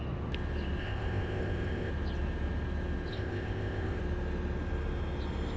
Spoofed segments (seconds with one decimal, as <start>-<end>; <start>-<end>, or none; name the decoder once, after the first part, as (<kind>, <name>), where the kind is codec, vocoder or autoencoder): 0.8-1.9 (codec, ZipCodec); 3.1-4.0